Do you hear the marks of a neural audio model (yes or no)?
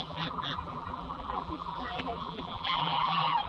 yes